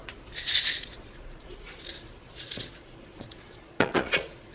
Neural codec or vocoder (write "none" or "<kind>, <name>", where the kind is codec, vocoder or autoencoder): vocoder, Vocos